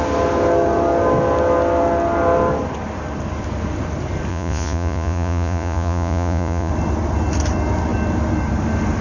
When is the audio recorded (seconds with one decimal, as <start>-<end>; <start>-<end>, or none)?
0.0-4.3; 6.7-9.0